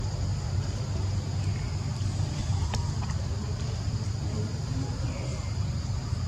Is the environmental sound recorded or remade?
recorded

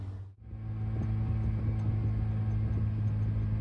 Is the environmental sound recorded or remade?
recorded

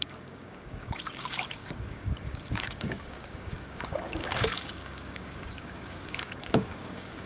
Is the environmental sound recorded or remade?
remade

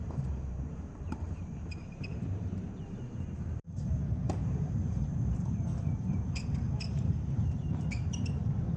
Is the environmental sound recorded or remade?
remade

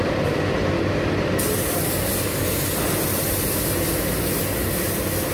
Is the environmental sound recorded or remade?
recorded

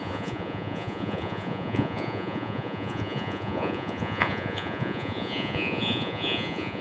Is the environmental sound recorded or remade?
remade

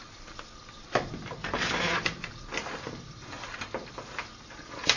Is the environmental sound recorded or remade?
remade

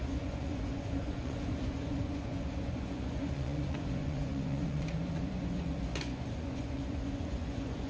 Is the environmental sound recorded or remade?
remade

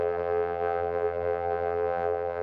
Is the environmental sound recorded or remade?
remade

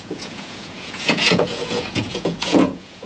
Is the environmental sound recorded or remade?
remade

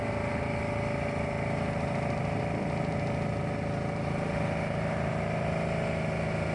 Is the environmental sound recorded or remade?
recorded